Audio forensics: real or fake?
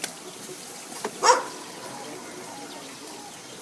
real